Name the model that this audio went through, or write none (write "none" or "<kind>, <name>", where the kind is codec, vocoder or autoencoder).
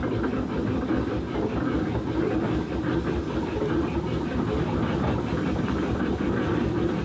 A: none